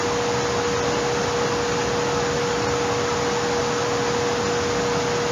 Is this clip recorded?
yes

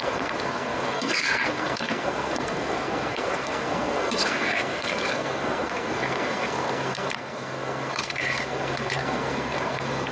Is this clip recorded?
no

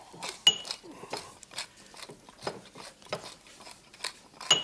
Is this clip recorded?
yes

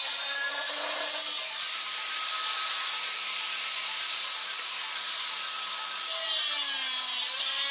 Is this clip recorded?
yes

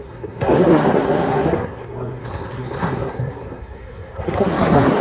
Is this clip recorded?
no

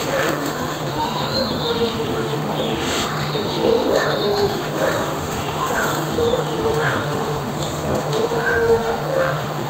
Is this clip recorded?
no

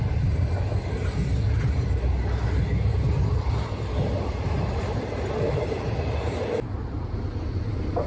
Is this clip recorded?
yes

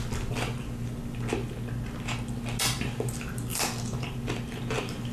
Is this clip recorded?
yes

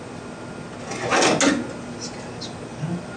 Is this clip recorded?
yes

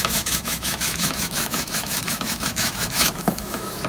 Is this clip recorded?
no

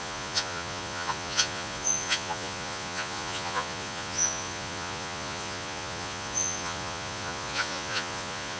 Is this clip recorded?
no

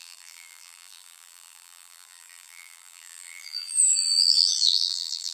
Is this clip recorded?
no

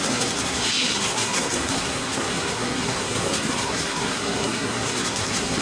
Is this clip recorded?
no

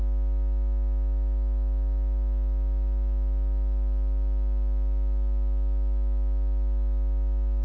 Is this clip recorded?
yes